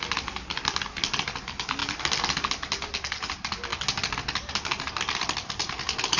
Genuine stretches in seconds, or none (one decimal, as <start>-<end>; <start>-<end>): 0.0-6.2